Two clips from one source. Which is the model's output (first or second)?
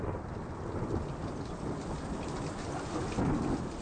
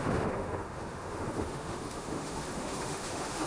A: second